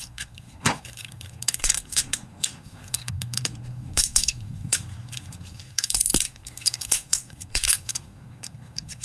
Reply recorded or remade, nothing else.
remade